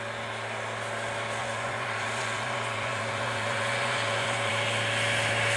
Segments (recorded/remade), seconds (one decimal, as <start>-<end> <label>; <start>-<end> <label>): 0.0-1.4 recorded; 1.4-4.5 remade; 4.5-5.6 recorded